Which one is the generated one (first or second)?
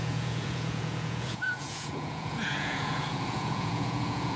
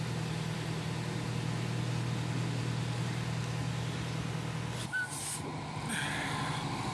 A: first